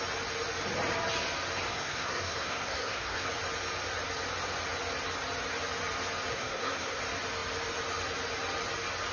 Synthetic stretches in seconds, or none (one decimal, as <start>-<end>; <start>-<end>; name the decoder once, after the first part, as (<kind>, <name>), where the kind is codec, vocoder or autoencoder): 1.7-3.3 (codec, SNAC); 6.3-7.0